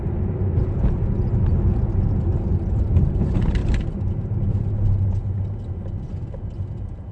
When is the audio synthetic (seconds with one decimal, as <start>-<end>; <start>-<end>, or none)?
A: none